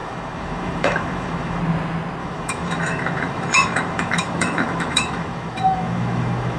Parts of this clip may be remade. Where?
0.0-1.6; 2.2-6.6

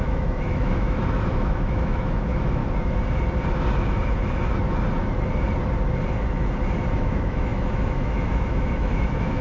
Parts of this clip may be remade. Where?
0.0-2.6; 6.9-9.4

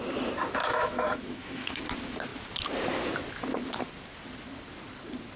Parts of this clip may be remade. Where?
0.6-1.8

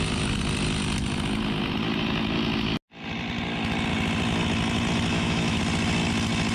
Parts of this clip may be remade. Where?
5.1-5.6

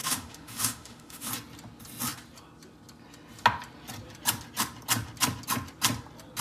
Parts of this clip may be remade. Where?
0.0-1.3

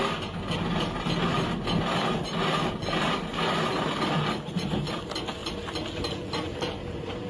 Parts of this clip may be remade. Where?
none

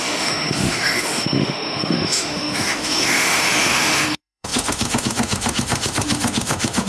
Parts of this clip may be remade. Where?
0.0-6.9

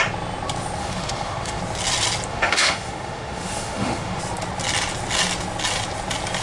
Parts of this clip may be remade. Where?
0.8-1.6; 2.3-4.2